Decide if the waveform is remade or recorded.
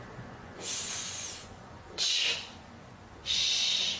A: remade